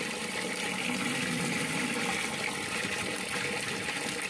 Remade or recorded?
recorded